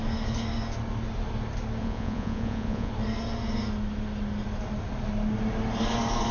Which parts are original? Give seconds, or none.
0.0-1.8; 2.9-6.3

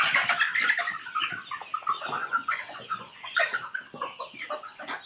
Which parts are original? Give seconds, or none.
0.0-2.2; 3.8-5.1

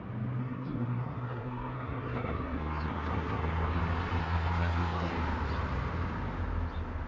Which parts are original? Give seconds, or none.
0.0-0.4; 3.8-4.2; 5.1-7.1

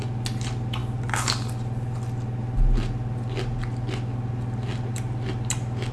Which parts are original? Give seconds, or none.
0.0-5.9